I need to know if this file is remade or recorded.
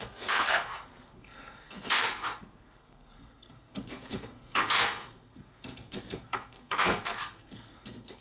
remade